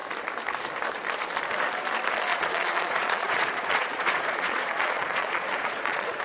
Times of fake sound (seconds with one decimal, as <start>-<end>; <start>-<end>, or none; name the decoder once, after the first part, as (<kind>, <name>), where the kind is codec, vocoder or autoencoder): 2.3-6.2 (vocoder, Vocos)